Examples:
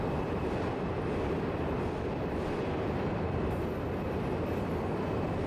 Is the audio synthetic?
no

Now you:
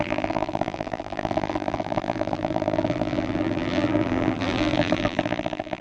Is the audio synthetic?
yes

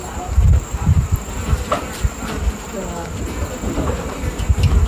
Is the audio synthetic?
yes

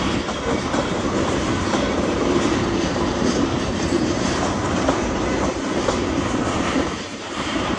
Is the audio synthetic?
yes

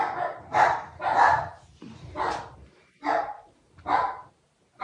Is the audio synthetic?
yes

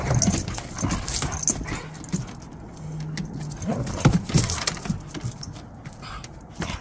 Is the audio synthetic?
no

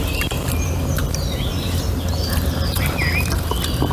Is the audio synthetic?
yes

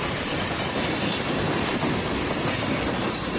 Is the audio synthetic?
no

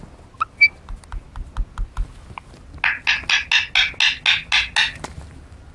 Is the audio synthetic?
no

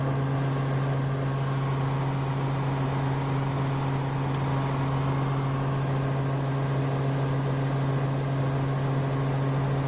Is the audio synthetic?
no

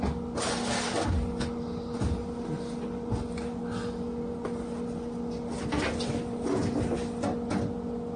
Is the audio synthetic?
no